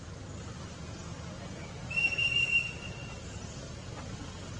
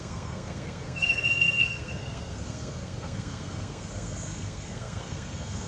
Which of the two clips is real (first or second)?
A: first